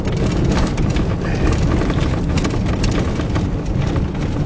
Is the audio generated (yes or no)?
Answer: no